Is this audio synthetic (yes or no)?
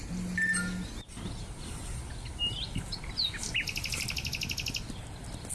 no